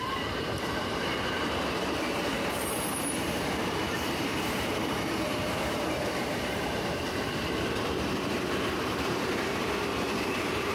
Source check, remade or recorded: remade